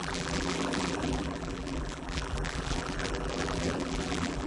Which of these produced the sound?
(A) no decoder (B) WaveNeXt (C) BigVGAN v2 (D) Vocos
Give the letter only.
C